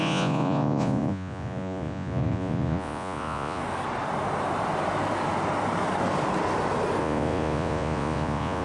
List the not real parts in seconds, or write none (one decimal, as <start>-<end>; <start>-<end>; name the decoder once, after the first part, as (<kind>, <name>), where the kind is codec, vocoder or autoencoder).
0.0-3.6 (vocoder, Vocos); 7.0-8.6